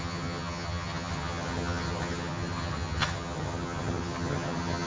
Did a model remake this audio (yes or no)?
yes